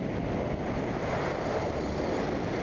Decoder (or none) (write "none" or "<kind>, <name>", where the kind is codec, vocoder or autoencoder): none